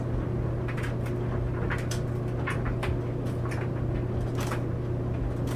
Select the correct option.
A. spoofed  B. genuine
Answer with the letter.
B